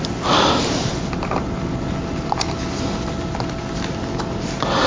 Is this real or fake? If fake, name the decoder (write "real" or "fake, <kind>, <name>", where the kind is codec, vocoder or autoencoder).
real